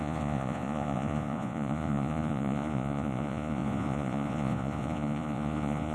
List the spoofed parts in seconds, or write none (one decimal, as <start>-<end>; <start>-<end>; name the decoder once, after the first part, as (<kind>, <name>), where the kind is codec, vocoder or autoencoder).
0.0-5.9 (vocoder, Vocos)